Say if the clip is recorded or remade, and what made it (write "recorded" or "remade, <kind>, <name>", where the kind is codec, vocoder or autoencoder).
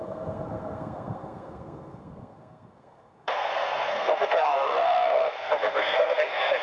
remade, codec, SNAC